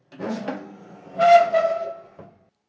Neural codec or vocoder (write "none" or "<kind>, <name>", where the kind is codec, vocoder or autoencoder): none